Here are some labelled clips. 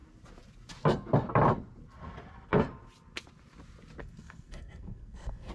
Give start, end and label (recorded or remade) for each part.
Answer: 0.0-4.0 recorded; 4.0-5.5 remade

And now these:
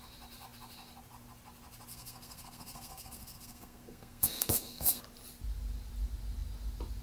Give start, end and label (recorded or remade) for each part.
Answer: 0.0-1.9 recorded; 1.9-5.0 remade; 5.0-7.0 recorded

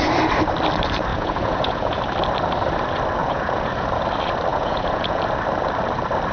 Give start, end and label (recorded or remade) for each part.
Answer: 0.0-1.1 recorded; 1.1-2.0 remade; 2.0-3.2 recorded; 3.2-3.7 remade; 3.7-4.5 recorded; 4.5-5.2 remade; 5.2-6.3 recorded